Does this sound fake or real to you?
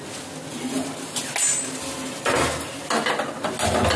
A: real